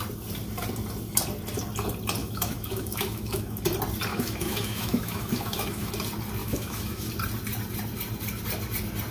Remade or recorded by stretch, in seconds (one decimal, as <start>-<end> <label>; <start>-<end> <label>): 0.0-2.2 recorded; 2.2-3.6 remade; 3.6-4.1 recorded; 4.1-5.9 remade; 5.9-6.4 recorded; 6.4-7.1 remade; 7.1-9.1 recorded